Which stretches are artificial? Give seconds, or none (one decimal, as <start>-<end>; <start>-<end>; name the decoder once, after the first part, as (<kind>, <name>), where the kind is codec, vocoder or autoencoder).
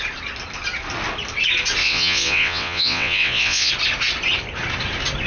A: 1.8-3.7 (vocoder, WaveNeXt)